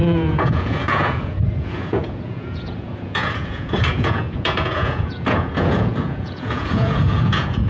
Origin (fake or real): fake